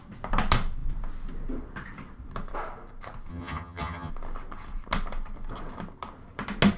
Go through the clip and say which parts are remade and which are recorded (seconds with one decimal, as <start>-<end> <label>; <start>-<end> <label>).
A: 0.0-3.3 recorded; 3.3-4.1 remade; 4.1-6.8 recorded